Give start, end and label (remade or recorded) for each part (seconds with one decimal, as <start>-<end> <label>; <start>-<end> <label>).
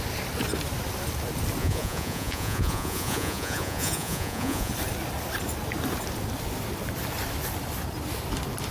0.0-1.6 recorded; 1.6-4.7 remade; 4.7-8.7 recorded